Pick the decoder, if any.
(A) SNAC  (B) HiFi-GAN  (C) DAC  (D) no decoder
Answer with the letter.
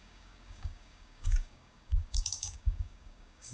C